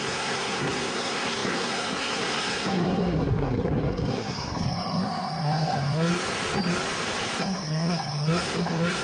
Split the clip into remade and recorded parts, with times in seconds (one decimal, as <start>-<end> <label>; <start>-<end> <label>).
0.0-6.1 remade; 6.1-7.4 recorded; 7.4-9.0 remade